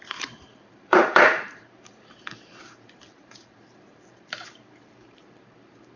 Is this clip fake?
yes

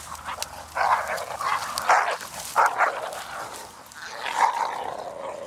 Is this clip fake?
no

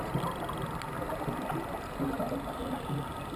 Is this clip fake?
no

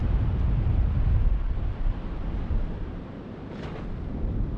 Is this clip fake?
no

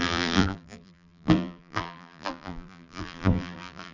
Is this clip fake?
yes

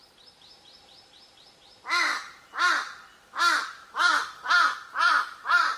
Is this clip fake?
no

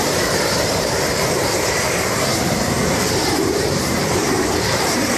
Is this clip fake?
yes